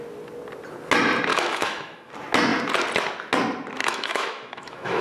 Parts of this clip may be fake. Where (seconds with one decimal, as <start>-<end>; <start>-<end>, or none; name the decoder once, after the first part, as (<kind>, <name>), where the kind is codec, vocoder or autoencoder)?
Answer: 1.3-2.1 (autoencoder, DAC-VAE); 3.8-5.0